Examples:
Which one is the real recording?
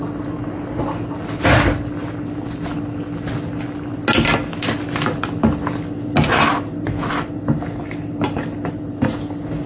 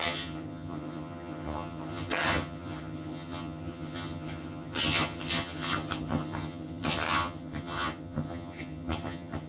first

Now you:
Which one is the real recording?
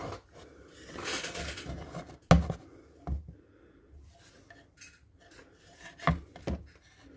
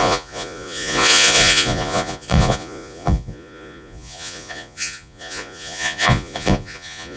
first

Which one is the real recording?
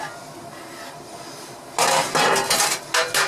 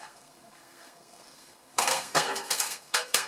first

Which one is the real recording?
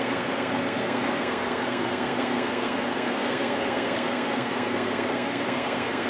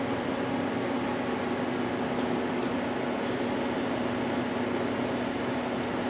second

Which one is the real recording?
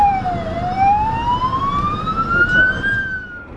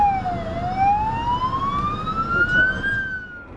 second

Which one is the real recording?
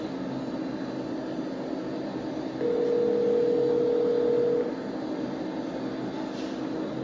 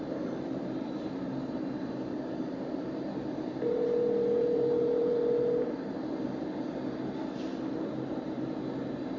first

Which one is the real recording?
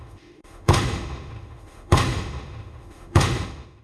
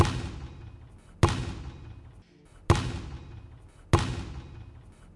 second